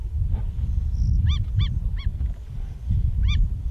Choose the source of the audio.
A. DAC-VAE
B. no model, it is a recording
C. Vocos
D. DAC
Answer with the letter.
B